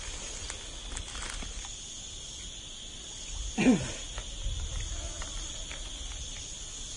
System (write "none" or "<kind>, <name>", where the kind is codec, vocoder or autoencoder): none